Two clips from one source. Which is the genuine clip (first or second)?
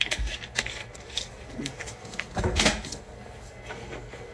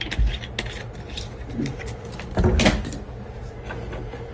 second